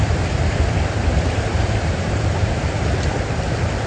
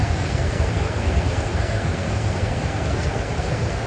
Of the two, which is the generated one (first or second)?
second